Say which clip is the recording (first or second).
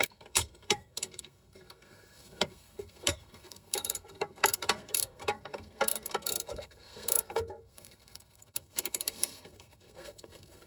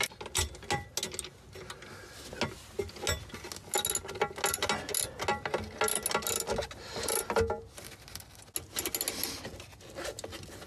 second